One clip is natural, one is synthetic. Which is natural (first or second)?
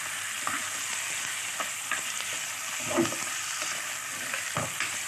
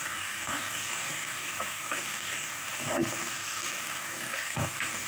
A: first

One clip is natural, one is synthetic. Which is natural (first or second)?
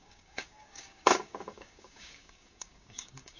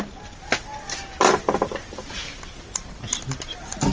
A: second